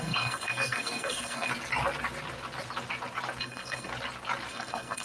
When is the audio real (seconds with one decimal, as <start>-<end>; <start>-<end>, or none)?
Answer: 1.5-3.4; 3.9-4.5